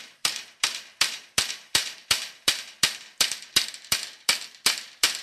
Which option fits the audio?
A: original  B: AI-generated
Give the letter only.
B